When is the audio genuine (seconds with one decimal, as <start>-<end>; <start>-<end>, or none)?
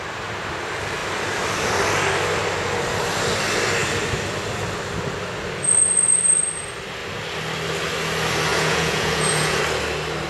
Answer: 0.0-8.5; 9.6-10.3